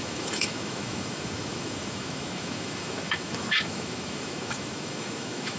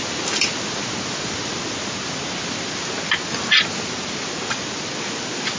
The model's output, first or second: first